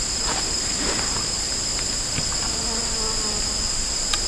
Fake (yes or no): no